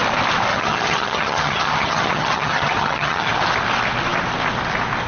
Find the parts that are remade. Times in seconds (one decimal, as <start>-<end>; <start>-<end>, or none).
0.5-3.3